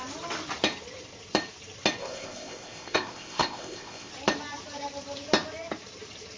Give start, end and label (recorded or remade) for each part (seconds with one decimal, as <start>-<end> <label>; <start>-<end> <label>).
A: 0.0-2.0 recorded; 2.0-4.1 remade; 4.1-6.4 recorded